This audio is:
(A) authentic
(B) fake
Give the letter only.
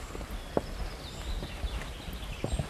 A